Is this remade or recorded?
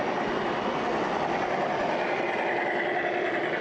recorded